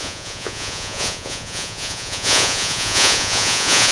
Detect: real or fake fake